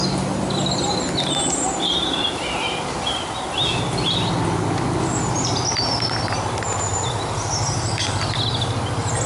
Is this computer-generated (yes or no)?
no